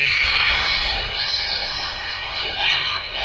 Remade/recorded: remade